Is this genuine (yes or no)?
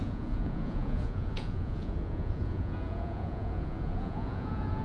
no